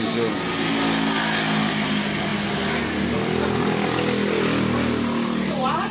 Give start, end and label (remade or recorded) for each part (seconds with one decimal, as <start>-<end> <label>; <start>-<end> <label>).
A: 0.0-5.9 recorded